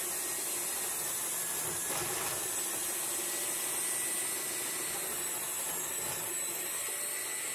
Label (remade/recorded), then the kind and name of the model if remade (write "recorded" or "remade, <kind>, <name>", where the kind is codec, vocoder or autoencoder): recorded